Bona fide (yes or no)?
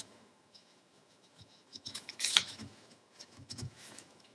no